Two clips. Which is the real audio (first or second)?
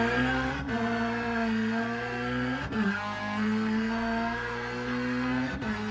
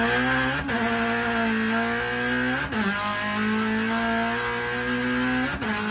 second